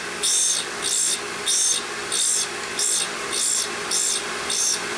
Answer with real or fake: real